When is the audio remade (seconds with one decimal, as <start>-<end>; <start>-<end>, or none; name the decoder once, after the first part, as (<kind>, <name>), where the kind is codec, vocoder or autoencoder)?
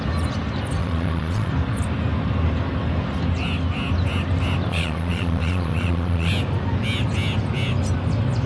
0.8-1.5 (vocoder, Vocos); 4.7-6.3